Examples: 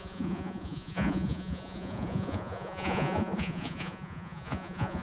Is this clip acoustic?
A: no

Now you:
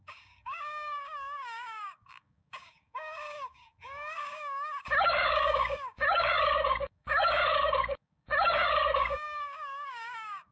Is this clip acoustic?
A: no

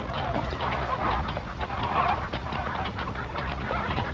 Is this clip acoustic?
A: no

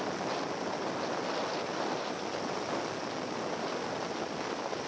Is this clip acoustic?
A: yes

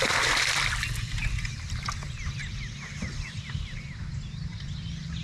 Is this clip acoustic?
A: yes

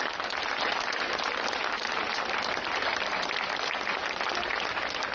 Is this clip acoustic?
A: yes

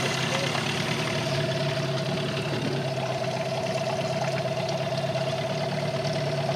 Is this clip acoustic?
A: yes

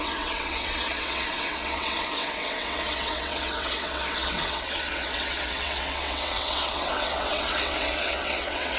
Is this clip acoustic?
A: no